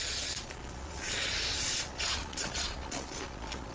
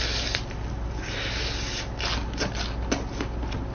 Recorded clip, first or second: second